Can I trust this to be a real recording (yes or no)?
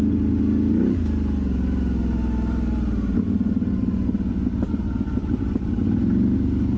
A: yes